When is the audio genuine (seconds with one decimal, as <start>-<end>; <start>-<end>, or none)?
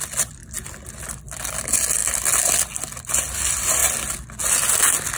0.0-5.2